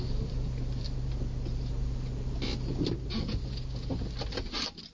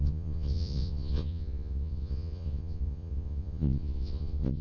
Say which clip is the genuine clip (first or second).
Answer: first